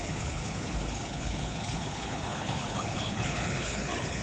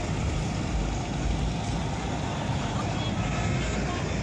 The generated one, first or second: first